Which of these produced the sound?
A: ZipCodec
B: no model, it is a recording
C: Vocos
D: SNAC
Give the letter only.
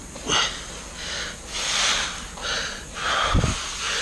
B